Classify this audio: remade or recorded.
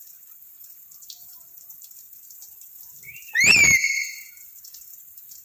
remade